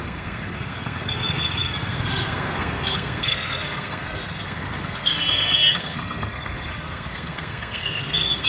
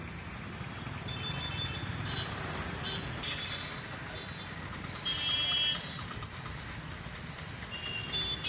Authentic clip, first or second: second